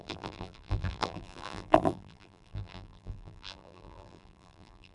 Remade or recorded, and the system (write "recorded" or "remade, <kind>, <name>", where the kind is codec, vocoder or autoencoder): remade, vocoder, BigVGAN v2